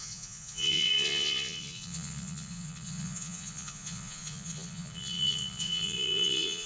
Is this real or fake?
fake